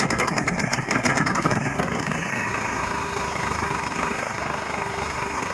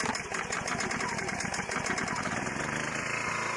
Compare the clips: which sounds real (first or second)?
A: second